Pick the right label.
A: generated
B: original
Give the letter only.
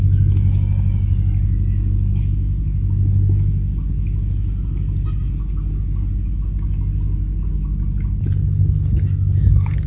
B